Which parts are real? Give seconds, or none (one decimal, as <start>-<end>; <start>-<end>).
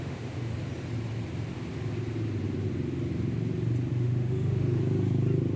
0.5-3.9; 4.8-5.6